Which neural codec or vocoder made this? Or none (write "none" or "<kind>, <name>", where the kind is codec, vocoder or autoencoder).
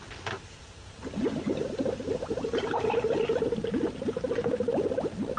none